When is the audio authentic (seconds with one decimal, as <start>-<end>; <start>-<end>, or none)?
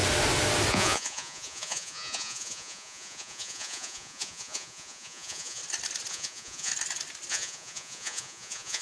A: 0.0-0.7; 5.6-6.1; 6.7-7.3